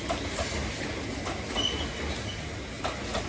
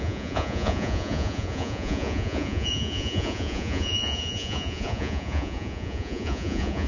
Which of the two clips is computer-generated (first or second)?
second